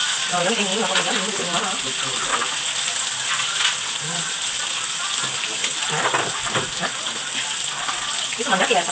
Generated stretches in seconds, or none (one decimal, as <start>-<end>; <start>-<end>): none